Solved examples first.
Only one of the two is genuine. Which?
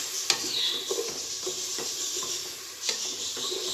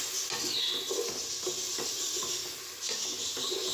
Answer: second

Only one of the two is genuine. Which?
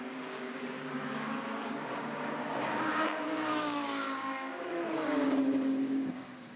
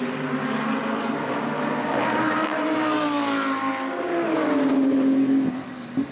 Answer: second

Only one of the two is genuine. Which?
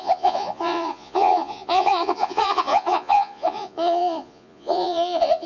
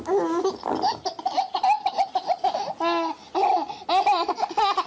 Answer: second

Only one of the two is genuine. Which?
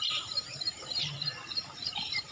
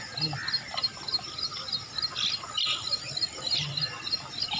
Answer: second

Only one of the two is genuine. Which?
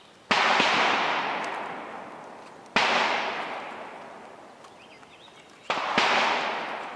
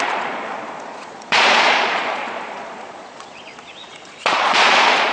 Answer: first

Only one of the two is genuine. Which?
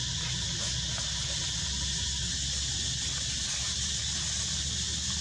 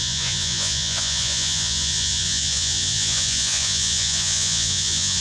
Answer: first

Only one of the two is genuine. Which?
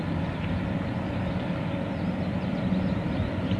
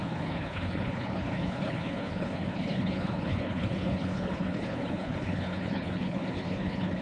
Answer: first